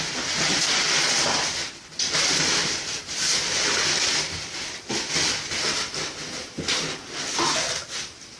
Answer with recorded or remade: recorded